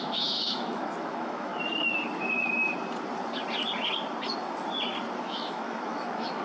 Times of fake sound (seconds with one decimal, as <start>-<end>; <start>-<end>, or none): 0.0-1.5; 5.2-6.4